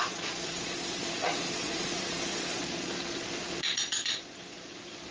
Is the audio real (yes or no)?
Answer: no